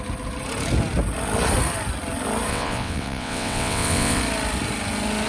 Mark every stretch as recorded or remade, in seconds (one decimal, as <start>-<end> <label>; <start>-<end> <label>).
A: 0.0-2.5 recorded; 2.5-4.2 remade; 4.2-5.3 recorded